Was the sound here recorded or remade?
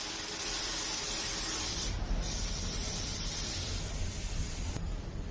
remade